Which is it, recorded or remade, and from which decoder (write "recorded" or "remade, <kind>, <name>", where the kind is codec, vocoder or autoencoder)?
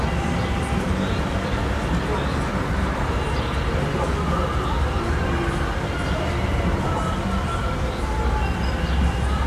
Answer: recorded